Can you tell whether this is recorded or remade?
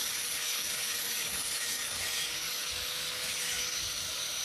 remade